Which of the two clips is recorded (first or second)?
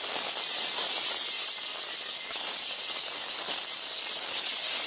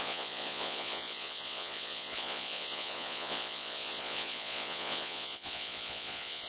first